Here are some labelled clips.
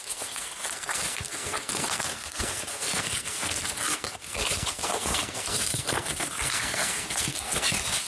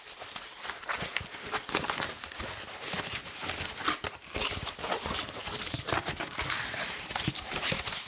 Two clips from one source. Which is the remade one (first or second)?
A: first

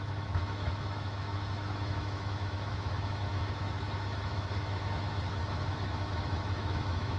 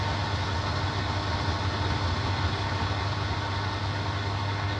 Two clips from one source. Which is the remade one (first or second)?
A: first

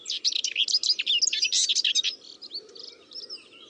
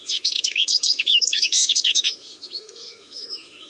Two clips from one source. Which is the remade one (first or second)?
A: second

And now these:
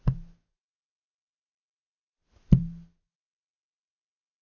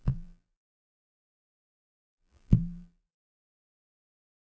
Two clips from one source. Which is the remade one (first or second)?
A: second